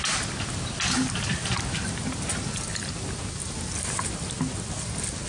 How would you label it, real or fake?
real